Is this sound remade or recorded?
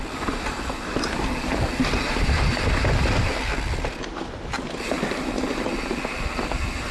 recorded